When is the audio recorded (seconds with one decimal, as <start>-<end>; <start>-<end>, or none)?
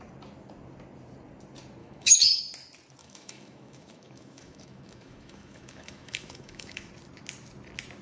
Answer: 0.0-1.8; 2.4-3.0; 6.9-8.0